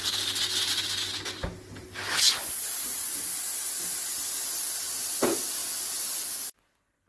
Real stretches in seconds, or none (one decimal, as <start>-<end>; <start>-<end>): 0.0-7.1